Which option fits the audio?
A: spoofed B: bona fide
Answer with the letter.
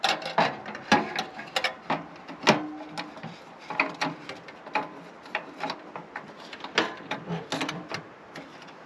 B